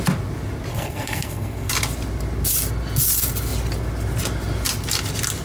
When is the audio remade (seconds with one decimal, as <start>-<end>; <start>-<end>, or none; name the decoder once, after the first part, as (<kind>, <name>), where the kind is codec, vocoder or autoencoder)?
0.7-1.7 (codec, SNAC)